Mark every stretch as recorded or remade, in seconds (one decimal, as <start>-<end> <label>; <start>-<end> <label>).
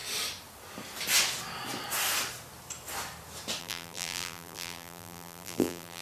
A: 0.0-3.6 recorded; 3.6-6.0 remade